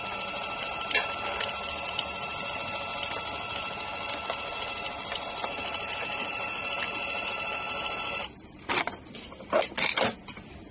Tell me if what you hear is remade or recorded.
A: recorded